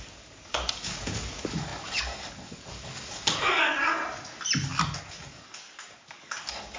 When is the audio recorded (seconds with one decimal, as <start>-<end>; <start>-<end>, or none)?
4.0-5.0

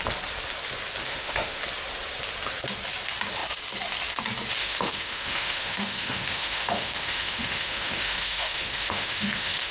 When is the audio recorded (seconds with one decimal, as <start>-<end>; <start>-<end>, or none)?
0.0-1.1; 1.6-4.6

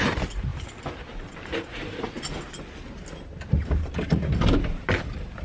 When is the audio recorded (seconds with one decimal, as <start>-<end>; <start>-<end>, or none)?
0.5-3.7

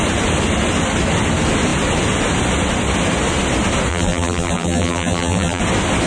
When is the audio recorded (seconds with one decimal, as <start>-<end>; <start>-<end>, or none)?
0.0-3.9; 5.6-6.1